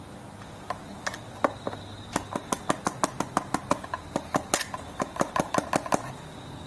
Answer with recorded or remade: recorded